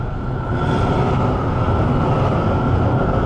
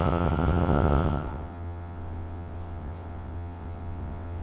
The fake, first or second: second